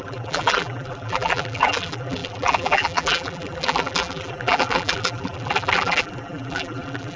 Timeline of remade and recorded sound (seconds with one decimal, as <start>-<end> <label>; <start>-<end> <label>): 0.0-7.2 remade